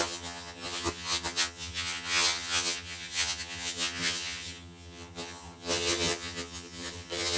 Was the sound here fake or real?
fake